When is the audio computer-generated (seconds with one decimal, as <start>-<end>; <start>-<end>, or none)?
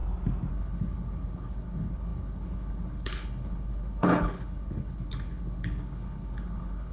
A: 0.5-6.9